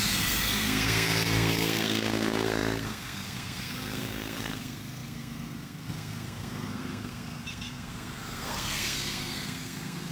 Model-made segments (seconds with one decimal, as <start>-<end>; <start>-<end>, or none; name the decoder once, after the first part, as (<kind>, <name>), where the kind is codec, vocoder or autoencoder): 0.0-10.1 (codec, SNAC)